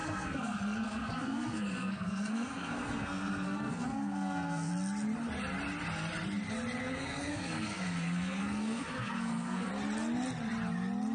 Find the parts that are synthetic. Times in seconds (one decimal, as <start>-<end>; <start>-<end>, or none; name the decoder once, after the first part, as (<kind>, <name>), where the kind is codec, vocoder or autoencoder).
0.0-4.7 (codec, SNAC); 6.8-9.7